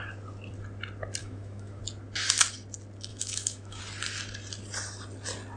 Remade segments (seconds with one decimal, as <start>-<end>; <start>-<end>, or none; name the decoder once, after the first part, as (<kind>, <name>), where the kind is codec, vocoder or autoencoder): 1.2-1.8 (autoencoder, DAC-VAE); 3.1-3.8